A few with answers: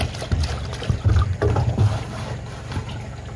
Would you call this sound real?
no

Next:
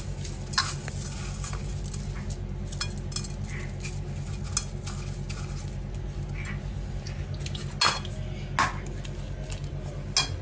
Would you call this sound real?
yes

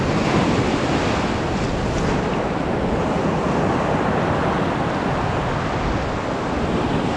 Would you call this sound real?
yes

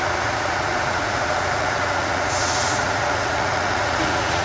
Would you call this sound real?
no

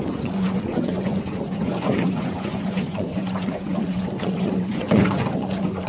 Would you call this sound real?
no